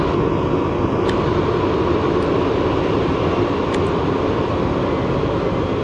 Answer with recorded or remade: recorded